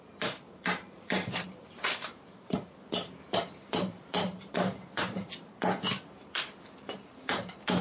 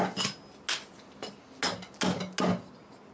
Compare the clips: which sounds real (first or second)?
second